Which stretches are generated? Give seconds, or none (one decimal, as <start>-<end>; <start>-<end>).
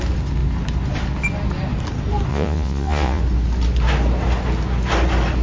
2.3-3.2